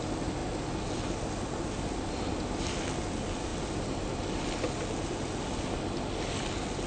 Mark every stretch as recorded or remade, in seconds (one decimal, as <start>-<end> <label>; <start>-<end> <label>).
0.0-6.9 recorded